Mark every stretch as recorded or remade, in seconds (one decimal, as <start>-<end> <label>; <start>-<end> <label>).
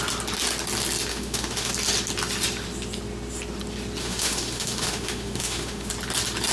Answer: 0.0-1.1 recorded; 1.1-1.7 remade; 1.7-4.0 recorded; 4.0-5.9 remade; 5.9-6.5 recorded